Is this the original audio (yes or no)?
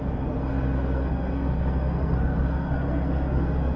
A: no